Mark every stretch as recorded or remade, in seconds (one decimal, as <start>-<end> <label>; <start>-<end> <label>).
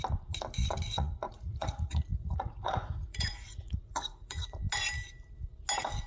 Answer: 0.0-0.9 recorded; 0.9-4.6 remade; 4.6-6.1 recorded